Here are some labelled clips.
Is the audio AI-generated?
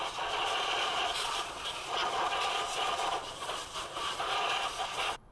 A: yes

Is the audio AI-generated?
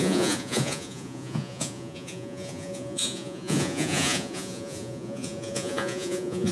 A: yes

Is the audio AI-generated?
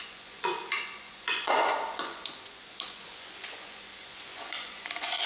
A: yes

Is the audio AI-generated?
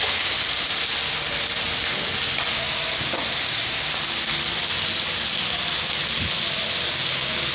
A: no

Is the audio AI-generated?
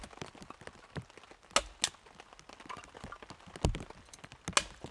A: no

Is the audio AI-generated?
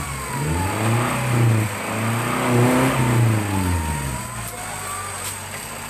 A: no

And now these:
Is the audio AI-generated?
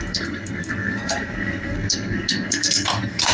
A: yes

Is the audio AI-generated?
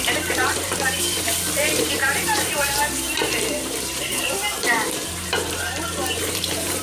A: yes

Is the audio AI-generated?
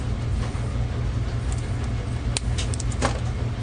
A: no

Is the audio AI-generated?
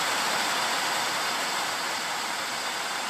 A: yes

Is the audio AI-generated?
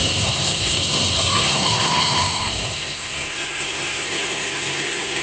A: yes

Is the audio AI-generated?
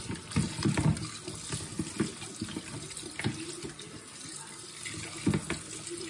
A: no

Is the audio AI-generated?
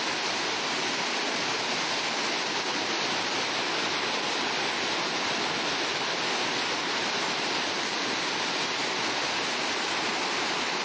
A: no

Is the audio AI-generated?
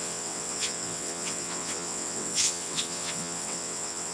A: yes